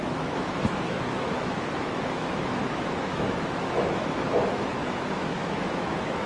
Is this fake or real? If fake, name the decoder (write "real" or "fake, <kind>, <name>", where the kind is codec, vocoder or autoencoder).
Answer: fake, autoencoder, DAC-VAE